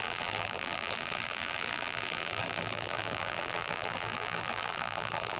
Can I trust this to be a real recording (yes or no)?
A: no